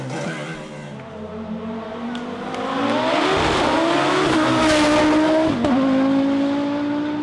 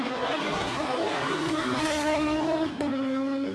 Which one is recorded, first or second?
first